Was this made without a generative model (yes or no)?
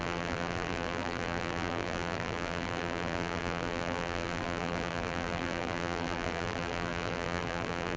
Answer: no